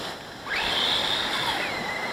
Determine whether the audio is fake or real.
real